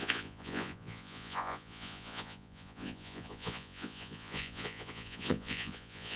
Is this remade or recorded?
remade